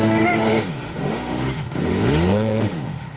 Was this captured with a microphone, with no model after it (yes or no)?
no